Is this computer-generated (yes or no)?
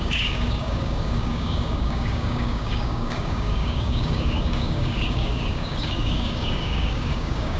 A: yes